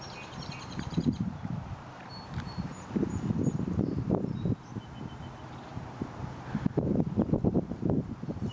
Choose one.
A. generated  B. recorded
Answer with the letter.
A